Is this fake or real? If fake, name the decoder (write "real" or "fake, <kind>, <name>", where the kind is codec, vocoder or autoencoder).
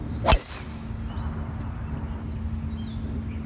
real